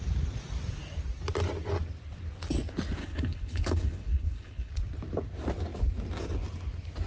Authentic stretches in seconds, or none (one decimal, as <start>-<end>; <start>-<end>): 0.0-3.0; 4.7-7.1